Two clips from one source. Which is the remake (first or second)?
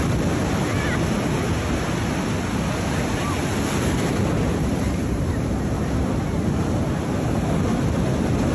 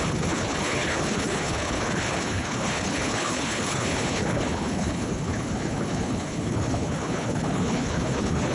second